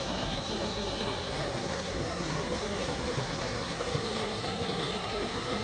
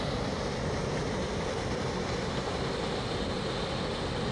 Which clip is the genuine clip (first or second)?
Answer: second